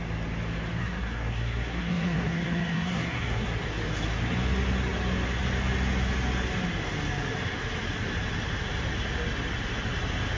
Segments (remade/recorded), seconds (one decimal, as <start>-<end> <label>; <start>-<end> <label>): 0.0-0.8 recorded; 0.8-3.5 remade; 3.5-10.4 recorded